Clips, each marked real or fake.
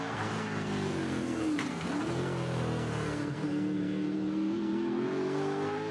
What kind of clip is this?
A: fake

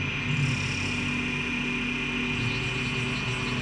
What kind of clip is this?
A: real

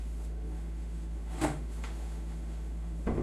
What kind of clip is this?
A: fake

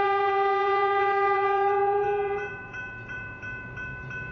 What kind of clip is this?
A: fake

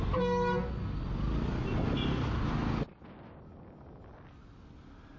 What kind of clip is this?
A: real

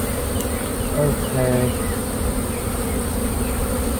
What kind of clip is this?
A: real